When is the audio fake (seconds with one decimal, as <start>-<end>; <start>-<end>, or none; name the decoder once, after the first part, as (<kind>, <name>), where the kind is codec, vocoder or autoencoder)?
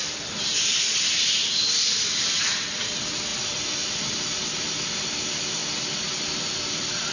0.0-5.6 (vocoder, BigVGAN v2); 6.4-7.1